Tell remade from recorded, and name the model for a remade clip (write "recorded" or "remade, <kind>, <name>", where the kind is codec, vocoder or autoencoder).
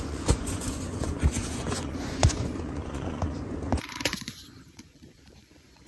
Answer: remade, vocoder, Vocos